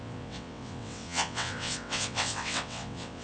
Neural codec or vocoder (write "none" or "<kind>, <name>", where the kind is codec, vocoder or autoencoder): vocoder, WaveNeXt